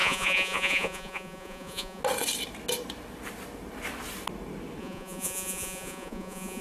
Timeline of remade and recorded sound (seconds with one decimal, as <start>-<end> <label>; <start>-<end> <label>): 0.0-2.0 remade; 2.0-4.8 recorded; 4.8-6.6 remade